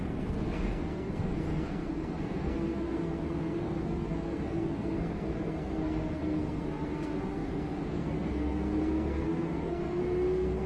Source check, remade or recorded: remade